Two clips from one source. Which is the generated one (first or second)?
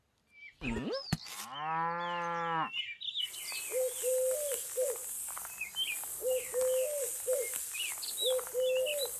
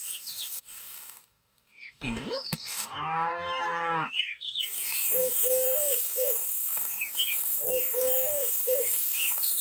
second